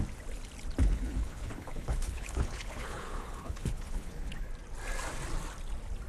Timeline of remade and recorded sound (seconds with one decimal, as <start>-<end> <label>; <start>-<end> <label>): 0.0-0.8 recorded; 0.8-4.5 remade; 4.5-6.1 recorded